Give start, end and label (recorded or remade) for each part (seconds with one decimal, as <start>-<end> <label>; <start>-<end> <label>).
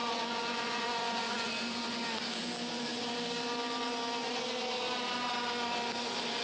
0.0-1.5 remade; 1.5-6.4 recorded